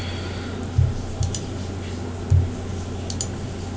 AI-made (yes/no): no